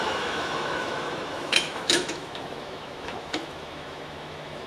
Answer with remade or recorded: remade